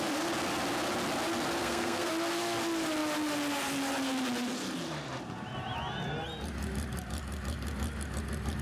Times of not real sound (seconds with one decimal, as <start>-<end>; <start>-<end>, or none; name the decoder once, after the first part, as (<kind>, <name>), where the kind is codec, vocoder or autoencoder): 1.6-2.1 (codec, SNAC)